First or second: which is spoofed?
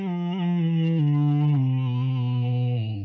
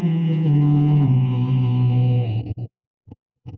second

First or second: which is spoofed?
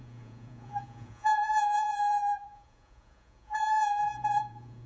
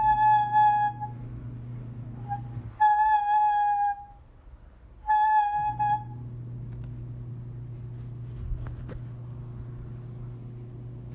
first